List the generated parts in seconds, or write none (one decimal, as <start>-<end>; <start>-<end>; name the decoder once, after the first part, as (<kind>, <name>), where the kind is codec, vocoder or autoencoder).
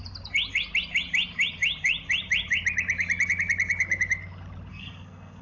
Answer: 4.7-5.4 (codec, SNAC)